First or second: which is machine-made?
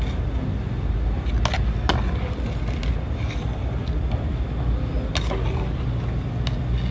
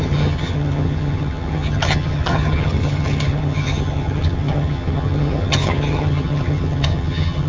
second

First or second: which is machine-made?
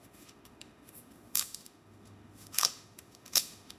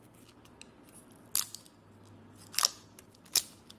first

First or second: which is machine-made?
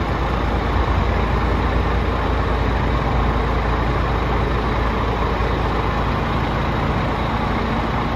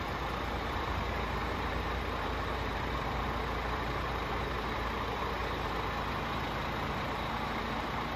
second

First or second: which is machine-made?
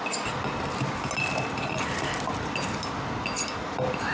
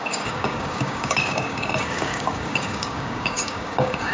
second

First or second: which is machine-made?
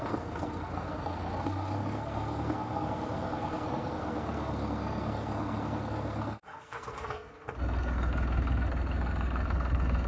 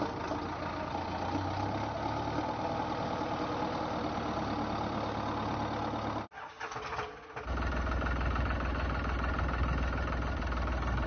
first